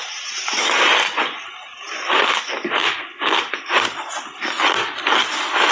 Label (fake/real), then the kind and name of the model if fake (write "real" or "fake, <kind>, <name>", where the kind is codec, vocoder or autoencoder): real